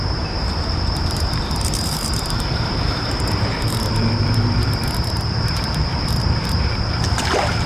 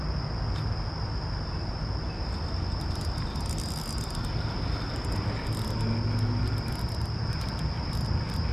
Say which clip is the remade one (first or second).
first